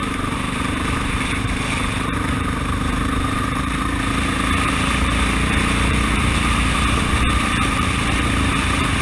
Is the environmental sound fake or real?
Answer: fake